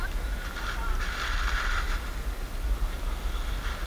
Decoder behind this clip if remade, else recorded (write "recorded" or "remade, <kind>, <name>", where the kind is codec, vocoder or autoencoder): recorded